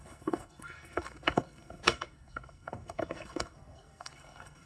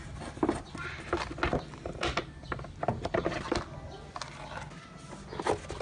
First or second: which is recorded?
second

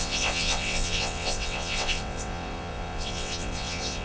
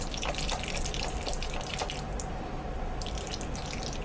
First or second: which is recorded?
second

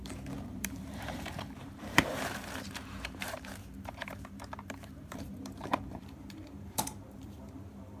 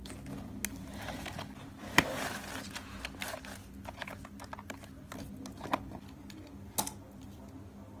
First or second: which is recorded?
second